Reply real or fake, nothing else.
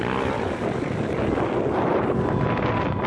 real